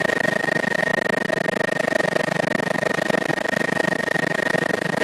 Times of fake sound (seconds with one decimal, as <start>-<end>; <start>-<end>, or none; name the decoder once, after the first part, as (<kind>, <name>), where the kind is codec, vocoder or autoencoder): none